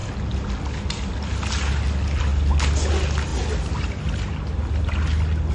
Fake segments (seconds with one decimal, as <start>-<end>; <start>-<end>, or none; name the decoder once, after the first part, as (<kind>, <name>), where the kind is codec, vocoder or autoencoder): none